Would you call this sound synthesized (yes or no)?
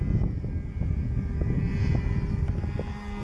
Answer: no